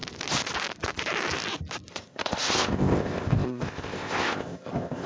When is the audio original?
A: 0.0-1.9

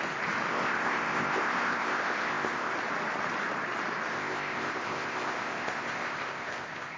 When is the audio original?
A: 0.0-0.5; 2.7-4.1

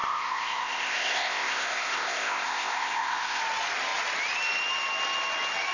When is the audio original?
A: 3.4-5.7

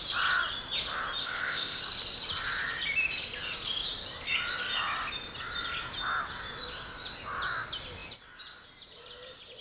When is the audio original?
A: 0.0-1.2; 1.8-9.6

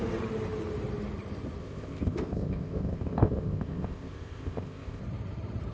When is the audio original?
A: 0.0-1.6; 5.0-5.7

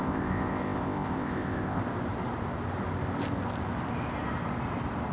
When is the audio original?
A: 1.8-5.1

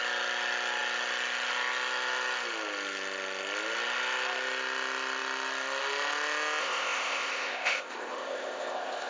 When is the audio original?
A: 0.0-6.6